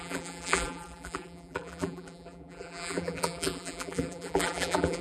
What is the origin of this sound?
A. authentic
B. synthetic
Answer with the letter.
B